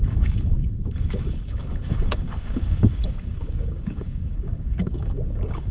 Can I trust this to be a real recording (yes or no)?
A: no